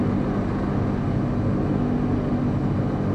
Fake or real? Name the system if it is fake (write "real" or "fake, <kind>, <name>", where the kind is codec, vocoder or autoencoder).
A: real